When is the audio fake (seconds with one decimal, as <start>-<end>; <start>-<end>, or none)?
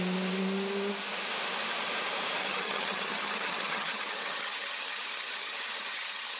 2.4-6.4